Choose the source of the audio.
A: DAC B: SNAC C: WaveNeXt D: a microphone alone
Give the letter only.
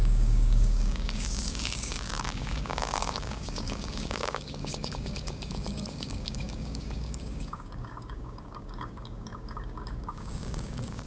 A